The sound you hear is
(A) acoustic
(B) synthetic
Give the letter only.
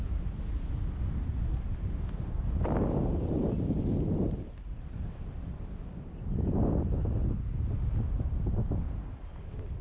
A